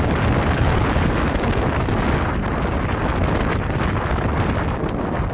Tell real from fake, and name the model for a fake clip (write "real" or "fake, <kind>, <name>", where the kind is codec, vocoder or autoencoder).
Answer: real